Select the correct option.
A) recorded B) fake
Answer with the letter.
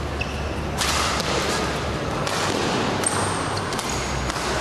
A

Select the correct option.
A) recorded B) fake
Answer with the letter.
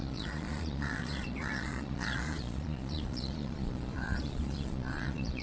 B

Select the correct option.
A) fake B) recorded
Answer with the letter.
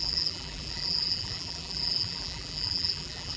A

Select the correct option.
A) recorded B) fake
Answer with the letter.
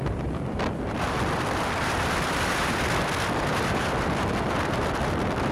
B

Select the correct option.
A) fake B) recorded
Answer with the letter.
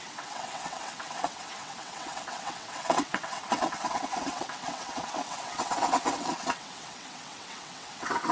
A